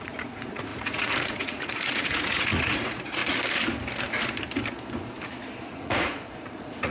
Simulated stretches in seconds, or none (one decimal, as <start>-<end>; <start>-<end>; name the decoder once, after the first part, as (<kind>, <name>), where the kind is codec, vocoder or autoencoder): 0.0-3.2 (vocoder, Vocos); 5.6-6.9